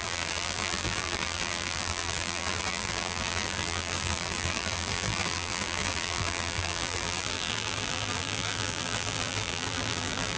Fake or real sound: fake